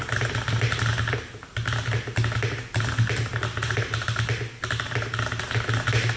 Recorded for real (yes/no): yes